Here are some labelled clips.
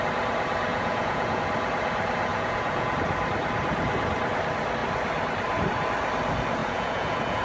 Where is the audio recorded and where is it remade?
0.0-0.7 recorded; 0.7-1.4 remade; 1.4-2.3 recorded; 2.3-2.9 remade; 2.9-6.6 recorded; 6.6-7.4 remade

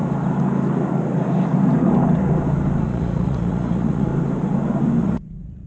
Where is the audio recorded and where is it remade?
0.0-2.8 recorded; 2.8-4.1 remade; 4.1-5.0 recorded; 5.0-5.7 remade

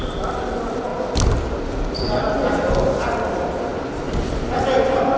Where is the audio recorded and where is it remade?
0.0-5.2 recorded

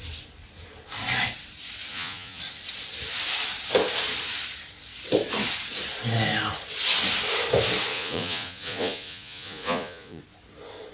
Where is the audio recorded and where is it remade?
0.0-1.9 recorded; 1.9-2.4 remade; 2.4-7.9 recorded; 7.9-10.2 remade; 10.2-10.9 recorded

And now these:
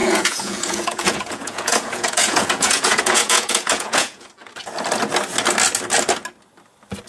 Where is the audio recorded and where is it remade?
0.0-4.3 remade; 4.3-7.1 recorded